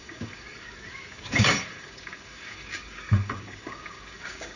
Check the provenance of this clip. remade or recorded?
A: remade